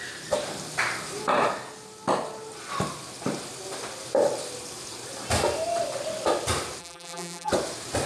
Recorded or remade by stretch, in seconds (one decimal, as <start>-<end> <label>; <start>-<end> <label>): 0.0-6.8 recorded; 6.8-7.5 remade; 7.5-8.1 recorded